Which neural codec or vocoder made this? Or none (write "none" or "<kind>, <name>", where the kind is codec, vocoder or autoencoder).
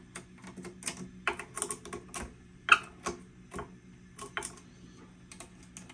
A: none